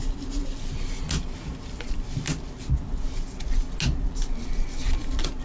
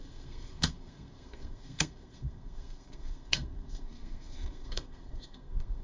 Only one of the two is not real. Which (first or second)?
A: second